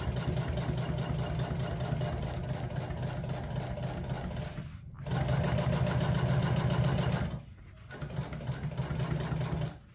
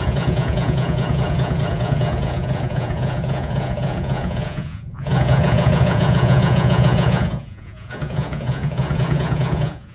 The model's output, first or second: second